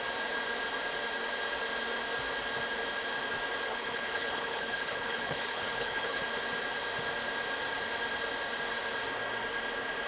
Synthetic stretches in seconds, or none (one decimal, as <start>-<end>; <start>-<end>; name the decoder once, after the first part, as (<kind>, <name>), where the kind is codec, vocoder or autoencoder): 3.7-6.2 (codec, HILCodec)